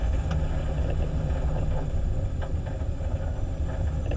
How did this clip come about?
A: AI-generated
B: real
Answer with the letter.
B